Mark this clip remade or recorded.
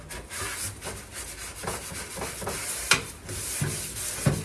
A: recorded